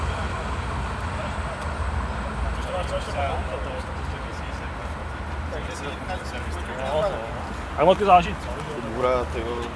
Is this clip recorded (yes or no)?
yes